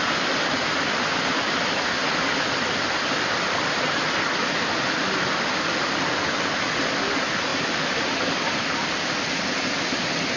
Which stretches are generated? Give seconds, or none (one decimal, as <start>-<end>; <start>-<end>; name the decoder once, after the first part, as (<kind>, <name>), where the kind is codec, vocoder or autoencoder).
none